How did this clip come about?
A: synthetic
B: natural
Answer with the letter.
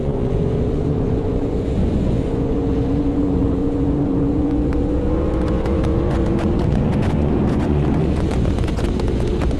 A